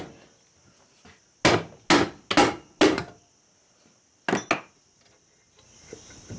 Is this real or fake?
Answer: real